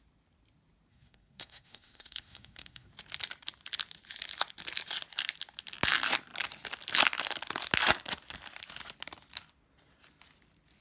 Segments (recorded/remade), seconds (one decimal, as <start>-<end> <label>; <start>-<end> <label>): 0.0-0.9 recorded; 0.9-2.9 remade; 2.9-10.8 recorded